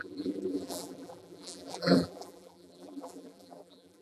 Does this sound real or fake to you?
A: fake